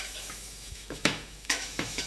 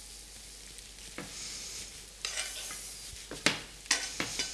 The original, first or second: second